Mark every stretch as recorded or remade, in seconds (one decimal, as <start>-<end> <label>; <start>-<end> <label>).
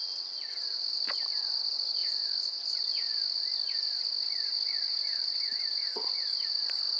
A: 0.0-7.0 recorded